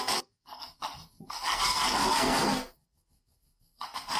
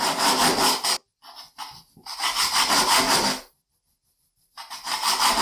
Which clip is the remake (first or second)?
first